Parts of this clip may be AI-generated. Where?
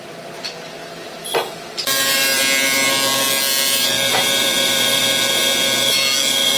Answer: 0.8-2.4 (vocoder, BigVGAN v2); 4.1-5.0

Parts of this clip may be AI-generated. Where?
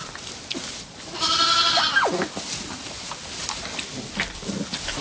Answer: none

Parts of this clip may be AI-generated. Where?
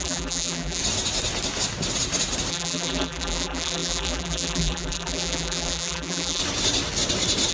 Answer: 0.0-0.8 (vocoder, BigVGAN v2); 2.5-6.4